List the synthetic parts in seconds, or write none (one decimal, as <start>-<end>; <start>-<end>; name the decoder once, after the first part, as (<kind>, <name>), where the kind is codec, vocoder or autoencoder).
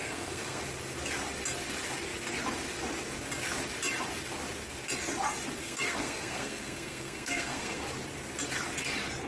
0.0-0.6 (codec, SNAC); 5.6-7.8